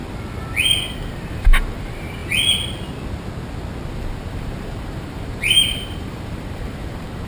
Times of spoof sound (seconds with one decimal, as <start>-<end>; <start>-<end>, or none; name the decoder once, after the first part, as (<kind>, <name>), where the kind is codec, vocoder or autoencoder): 0.9-2.2 (vocoder, BigVGAN v2); 3.9-7.3